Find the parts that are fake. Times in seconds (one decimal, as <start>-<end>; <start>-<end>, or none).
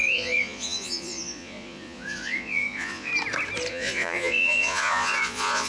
0.0-3.1; 3.7-5.7